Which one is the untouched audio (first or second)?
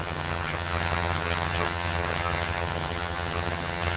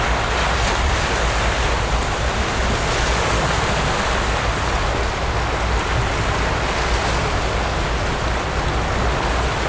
second